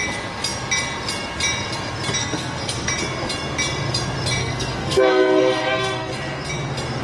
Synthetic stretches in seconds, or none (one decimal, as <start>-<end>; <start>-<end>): 2.2-2.9; 4.4-6.1